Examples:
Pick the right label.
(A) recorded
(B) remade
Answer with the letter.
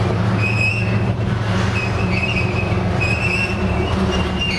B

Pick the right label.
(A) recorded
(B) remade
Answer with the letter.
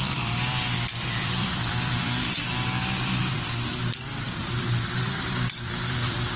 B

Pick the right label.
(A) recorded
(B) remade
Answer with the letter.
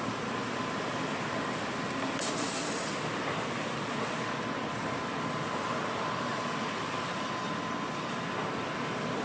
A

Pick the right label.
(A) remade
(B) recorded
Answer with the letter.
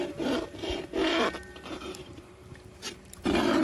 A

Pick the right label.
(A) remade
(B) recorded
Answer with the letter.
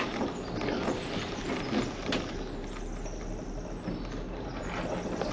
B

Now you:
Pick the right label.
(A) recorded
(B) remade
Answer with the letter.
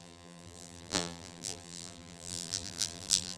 B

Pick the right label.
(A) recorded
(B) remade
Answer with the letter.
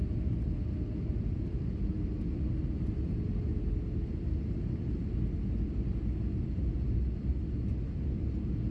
A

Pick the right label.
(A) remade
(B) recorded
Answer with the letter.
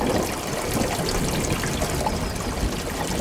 B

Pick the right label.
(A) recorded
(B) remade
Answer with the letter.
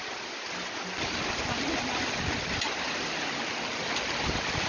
A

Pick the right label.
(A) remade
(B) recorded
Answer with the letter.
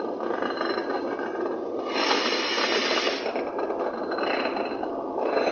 B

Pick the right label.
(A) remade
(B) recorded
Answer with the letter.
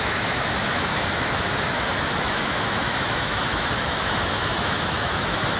A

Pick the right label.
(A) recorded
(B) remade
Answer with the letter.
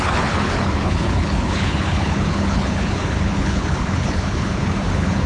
B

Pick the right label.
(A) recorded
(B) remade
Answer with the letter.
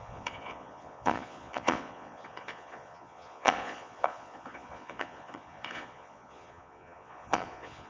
B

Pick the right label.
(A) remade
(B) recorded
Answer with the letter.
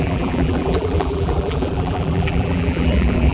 A